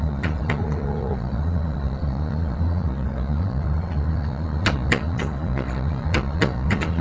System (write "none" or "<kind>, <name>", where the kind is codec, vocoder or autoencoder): vocoder, Vocos